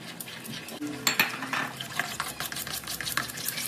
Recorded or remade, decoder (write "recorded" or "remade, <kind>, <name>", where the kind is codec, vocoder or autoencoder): recorded